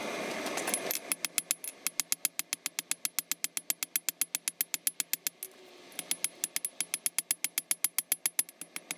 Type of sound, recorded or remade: recorded